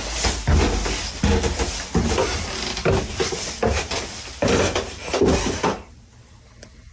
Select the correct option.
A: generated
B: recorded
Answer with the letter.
B